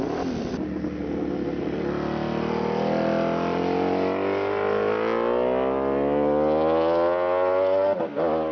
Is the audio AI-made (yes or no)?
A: no